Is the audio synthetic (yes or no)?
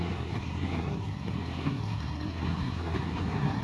yes